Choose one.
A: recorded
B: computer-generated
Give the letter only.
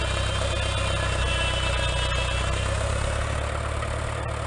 A